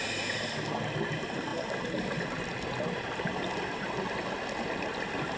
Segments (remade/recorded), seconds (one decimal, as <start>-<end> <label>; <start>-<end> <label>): 0.0-5.4 recorded